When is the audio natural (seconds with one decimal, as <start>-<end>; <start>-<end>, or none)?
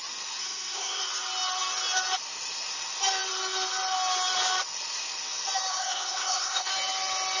0.0-0.4; 1.0-5.7; 6.7-7.4